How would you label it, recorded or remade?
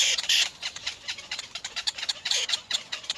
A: remade